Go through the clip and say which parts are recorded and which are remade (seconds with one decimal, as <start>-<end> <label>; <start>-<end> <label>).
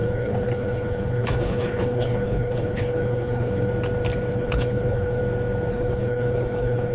0.0-3.7 remade; 3.7-4.3 recorded; 4.3-5.2 remade; 5.2-5.7 recorded; 5.7-6.9 remade